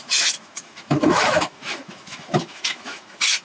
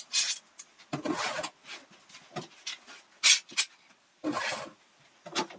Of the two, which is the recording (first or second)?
second